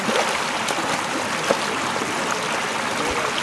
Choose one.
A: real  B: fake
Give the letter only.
A